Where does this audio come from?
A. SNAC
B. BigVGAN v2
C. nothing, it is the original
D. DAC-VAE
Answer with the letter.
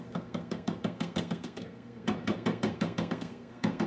A